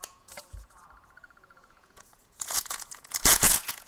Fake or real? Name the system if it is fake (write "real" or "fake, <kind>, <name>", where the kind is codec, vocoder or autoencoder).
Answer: fake, vocoder, Vocos